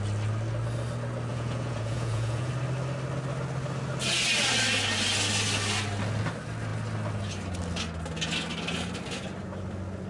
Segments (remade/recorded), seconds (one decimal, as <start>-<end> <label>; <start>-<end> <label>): 0.0-1.3 recorded; 1.3-2.5 remade; 2.5-10.1 recorded